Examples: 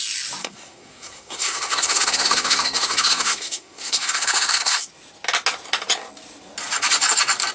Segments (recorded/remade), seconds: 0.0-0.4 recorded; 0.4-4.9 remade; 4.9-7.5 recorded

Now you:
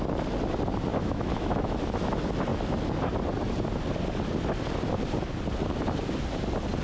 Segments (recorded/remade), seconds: 0.0-0.9 recorded; 0.9-1.8 remade; 1.8-6.8 recorded